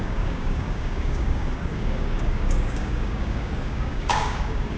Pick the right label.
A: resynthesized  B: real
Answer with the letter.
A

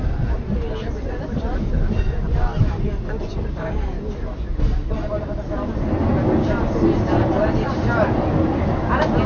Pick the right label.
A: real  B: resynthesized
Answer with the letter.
A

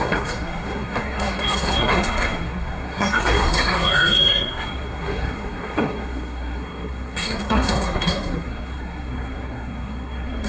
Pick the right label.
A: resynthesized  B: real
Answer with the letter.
A